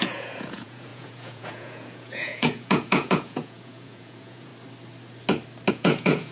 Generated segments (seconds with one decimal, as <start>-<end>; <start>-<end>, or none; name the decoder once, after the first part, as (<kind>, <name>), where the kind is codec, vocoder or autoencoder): 0.0-4.5 (vocoder, Vocos); 5.7-6.3